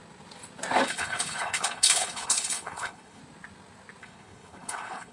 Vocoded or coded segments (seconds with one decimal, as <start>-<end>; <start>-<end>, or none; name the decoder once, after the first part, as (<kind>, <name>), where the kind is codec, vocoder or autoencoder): 0.9-3.2 (codec, HILCodec); 4.0-5.1